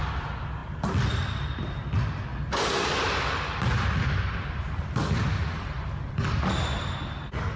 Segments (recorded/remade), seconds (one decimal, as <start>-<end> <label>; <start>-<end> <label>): 0.0-7.6 recorded